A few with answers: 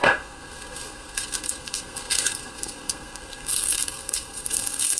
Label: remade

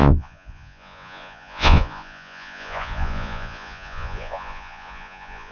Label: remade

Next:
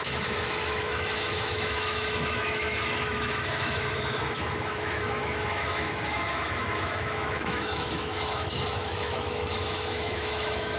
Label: remade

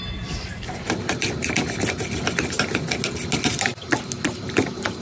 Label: recorded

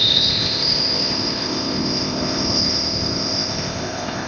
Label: remade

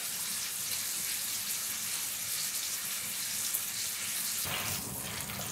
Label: recorded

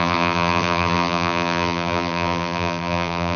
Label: remade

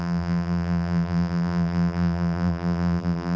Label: remade